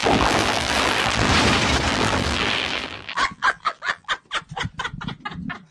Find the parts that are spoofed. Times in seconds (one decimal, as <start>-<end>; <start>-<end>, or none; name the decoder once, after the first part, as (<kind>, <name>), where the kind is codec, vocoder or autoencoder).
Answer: 0.0-1.3 (vocoder, BigVGAN v2); 1.9-4.1